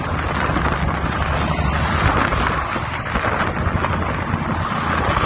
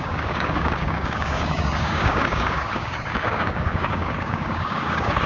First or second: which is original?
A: first